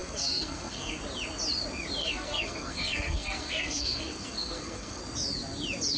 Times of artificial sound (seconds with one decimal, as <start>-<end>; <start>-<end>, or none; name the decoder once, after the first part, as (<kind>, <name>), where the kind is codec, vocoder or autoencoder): 0.0-1.0 (codec, SNAC); 2.0-5.0